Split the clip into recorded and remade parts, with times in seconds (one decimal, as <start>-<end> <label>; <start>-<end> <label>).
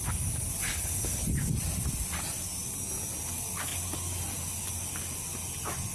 0.0-0.6 recorded; 0.6-1.5 remade; 1.5-5.9 recorded